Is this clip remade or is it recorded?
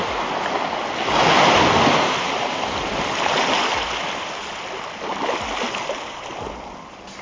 recorded